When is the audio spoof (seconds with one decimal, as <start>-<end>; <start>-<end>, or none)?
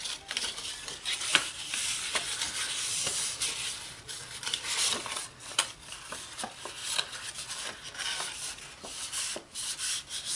0.0-6.8; 7.5-10.4